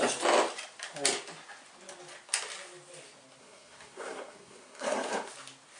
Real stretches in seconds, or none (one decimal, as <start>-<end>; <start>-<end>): 0.0-3.4; 5.3-5.8